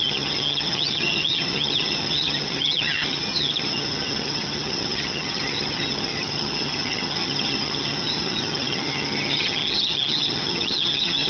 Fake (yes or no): yes